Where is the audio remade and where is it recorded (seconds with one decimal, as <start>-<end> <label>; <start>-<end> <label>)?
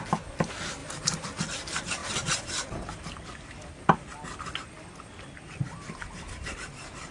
0.0-0.8 recorded; 0.8-1.4 remade; 1.4-7.1 recorded